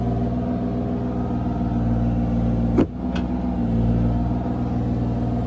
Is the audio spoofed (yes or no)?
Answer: no